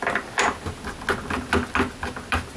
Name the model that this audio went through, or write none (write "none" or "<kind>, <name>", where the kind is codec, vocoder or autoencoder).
none